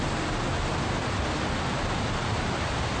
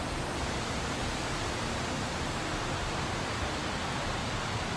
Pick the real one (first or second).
first